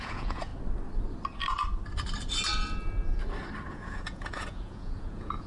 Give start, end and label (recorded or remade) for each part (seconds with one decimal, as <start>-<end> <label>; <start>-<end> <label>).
0.0-0.5 remade; 0.5-3.7 recorded; 3.7-5.5 remade